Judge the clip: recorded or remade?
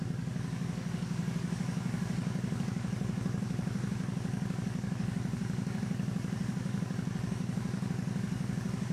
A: remade